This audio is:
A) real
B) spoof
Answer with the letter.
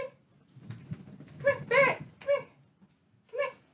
A